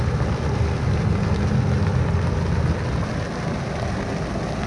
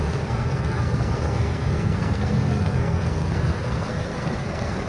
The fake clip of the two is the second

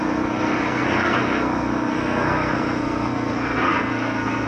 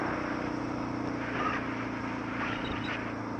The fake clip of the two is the first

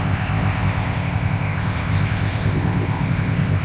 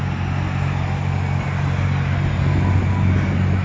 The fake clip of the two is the first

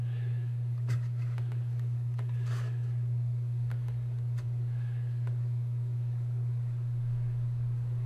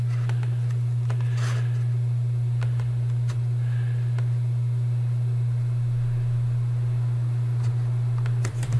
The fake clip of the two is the first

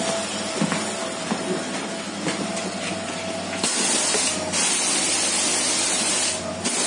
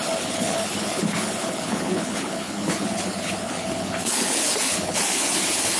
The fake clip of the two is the second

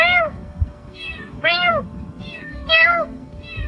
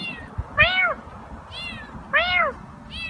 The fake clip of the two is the first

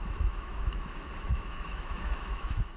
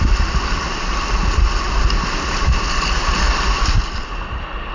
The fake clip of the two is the first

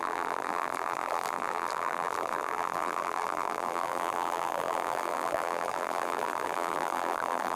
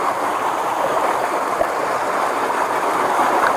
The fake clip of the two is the first